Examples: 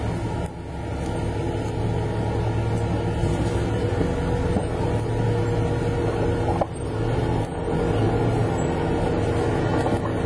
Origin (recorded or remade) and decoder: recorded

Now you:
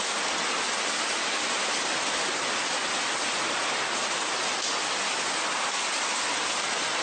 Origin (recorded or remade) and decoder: recorded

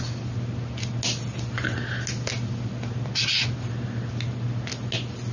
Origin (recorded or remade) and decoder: recorded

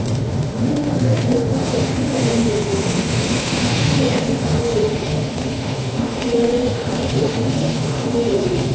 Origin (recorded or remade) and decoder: remade, autoencoder, DAC-VAE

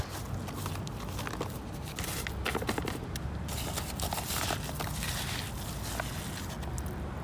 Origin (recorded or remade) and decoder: recorded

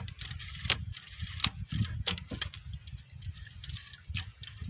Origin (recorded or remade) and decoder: recorded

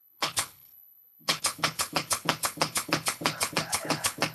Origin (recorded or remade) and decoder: remade, codec, HILCodec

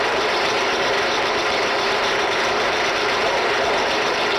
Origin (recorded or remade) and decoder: remade, vocoder, BigVGAN v2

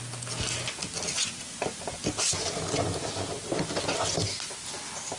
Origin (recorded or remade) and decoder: recorded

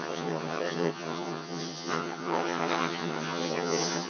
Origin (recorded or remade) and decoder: remade, vocoder, HiFi-GAN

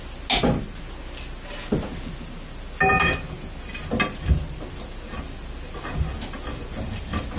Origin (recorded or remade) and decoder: recorded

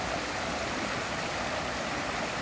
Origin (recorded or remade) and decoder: recorded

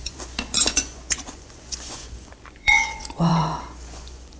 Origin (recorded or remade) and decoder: remade, vocoder, Vocos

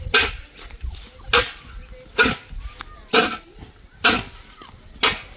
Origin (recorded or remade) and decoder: recorded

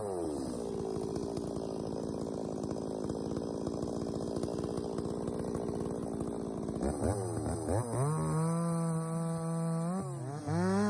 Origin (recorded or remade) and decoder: recorded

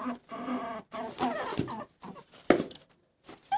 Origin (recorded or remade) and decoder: remade, vocoder, BigVGAN v2